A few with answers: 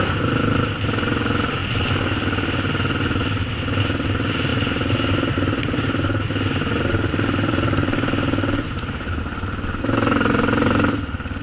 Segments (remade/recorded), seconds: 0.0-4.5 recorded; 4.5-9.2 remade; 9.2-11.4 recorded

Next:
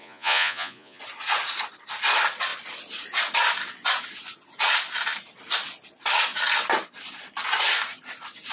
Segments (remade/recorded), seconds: 0.0-1.0 remade; 1.0-8.5 recorded

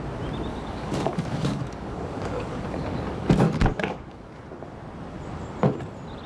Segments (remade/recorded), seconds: 0.0-0.5 recorded; 0.5-4.3 remade; 4.3-6.3 recorded

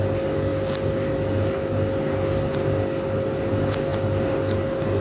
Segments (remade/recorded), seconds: 0.0-5.0 recorded